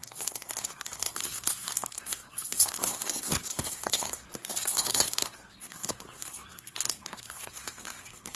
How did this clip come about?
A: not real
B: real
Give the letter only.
A